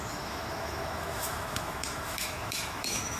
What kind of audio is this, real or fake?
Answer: fake